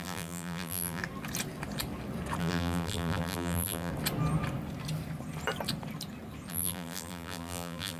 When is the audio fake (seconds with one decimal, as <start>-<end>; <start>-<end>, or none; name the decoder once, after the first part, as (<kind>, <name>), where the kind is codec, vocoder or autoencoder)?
0.0-1.0 (vocoder, BigVGAN v2); 2.4-3.9; 6.5-8.0